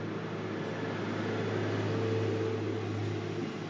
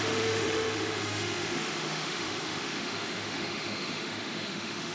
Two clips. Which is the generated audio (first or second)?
second